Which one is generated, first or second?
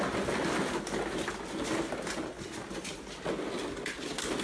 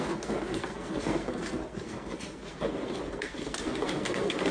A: second